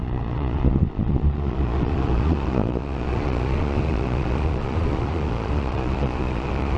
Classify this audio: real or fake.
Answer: fake